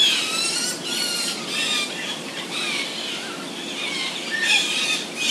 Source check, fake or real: real